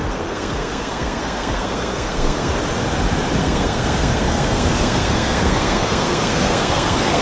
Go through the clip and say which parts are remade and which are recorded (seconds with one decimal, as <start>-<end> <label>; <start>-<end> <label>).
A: 0.0-2.5 remade; 2.5-3.4 recorded; 3.4-7.2 remade